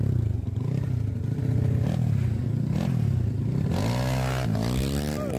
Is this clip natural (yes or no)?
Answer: yes